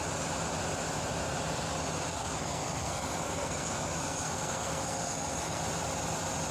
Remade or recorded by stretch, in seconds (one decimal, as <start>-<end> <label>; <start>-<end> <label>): 0.0-2.1 recorded; 2.1-5.6 remade; 5.6-6.5 recorded